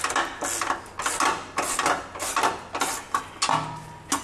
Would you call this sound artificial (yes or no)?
no